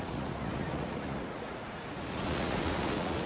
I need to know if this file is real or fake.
fake